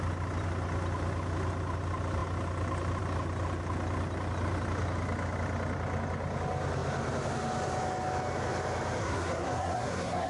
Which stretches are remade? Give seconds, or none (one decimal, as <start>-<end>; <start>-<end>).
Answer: 9.0-10.3